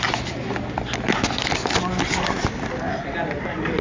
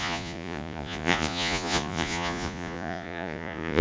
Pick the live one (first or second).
first